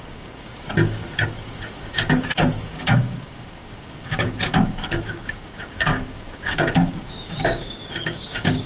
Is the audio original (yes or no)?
no